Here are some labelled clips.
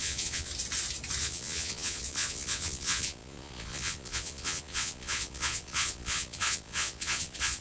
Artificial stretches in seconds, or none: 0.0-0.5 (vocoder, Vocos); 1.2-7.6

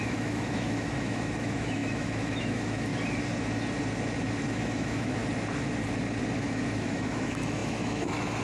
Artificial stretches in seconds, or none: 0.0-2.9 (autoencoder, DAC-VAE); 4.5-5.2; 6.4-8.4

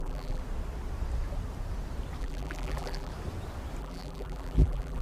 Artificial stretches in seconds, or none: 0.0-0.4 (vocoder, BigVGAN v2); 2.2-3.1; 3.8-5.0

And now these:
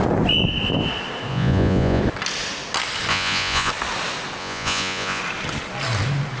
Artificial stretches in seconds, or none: 1.3-2.0 (vocoder, Vocos); 3.1-3.7; 4.4-5.2

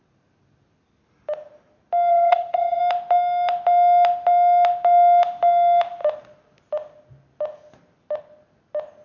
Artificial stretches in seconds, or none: 2.1-2.8 (vocoder, HiFi-GAN)

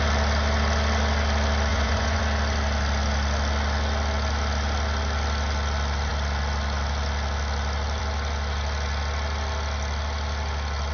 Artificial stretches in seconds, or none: 1.7-2.2 (vocoder, Vocos)

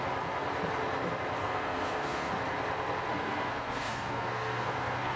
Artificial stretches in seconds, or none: 1.4-2.3 (codec, SNAC); 3.1-5.2